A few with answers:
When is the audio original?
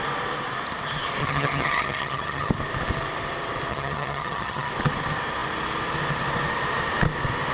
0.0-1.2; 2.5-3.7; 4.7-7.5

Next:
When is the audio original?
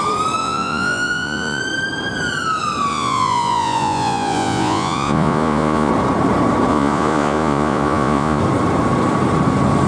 0.0-0.4; 1.6-2.9; 5.9-6.7; 8.4-9.9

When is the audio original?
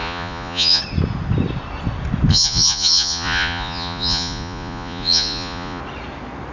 0.8-2.3; 5.8-6.5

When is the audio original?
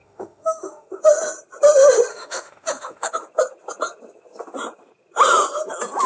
1.0-2.1; 3.1-6.1